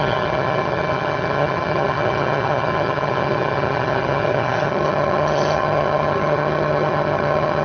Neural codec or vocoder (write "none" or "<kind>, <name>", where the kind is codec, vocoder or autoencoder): vocoder, HiFi-GAN